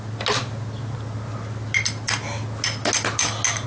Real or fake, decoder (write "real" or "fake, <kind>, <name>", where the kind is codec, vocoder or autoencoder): real